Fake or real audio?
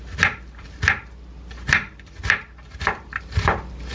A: real